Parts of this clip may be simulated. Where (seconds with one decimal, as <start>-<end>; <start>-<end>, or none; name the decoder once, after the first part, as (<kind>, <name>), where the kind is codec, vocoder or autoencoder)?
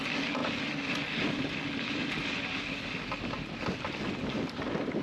none